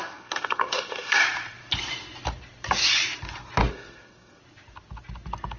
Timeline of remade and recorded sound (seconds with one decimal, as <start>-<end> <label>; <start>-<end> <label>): 0.0-1.2 remade; 1.2-3.7 recorded; 3.7-4.4 remade; 4.4-5.6 recorded